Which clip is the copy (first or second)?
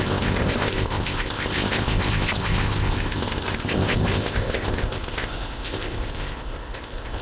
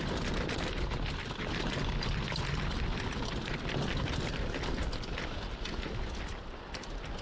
first